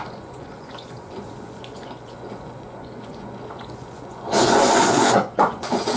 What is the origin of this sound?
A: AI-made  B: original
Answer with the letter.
A